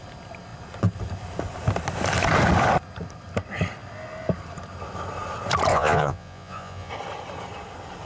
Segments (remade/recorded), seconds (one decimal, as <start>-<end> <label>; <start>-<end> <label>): 0.0-5.7 recorded; 5.7-6.9 remade; 6.9-8.1 recorded